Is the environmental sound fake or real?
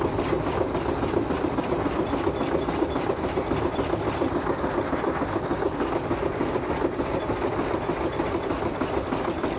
fake